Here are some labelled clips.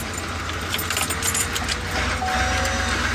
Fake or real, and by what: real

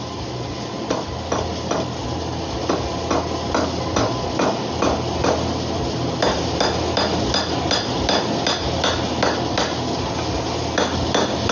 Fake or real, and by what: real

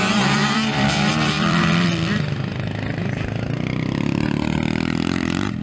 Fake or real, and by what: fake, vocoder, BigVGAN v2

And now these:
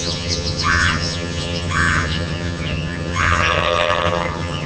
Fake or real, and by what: fake, vocoder, HiFi-GAN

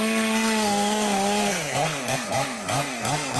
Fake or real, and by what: fake, codec, SNAC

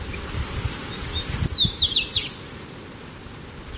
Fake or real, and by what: real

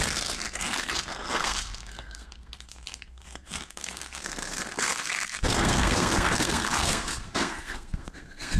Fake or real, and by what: fake, codec, SNAC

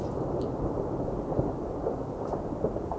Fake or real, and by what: real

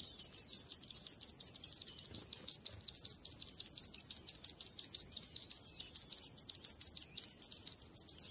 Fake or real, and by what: real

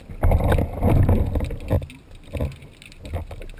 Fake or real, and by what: real